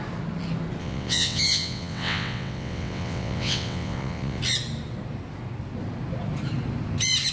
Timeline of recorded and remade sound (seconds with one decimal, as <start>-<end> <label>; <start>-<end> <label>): 0.0-0.8 recorded; 0.8-4.4 remade; 4.4-7.3 recorded